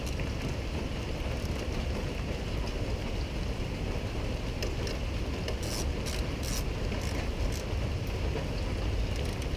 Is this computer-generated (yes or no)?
no